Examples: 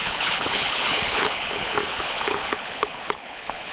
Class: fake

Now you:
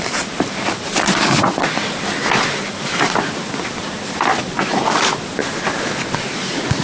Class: real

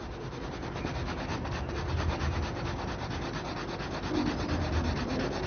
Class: real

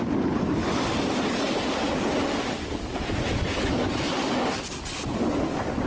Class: real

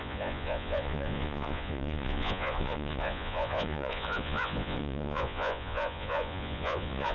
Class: fake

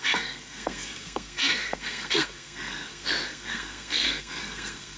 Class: fake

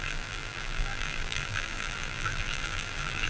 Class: fake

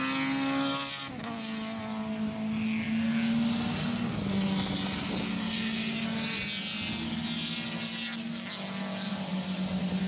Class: real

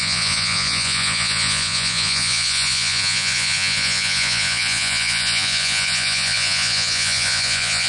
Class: fake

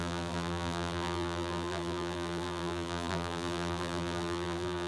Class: fake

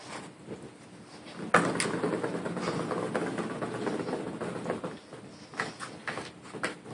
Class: real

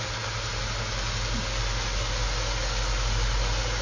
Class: real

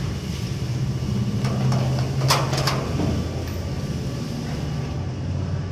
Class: real